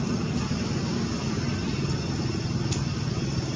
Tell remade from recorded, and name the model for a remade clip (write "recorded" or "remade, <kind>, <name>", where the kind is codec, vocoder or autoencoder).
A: recorded